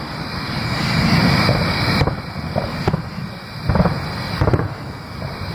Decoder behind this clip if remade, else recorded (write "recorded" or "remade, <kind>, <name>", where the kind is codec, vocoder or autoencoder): recorded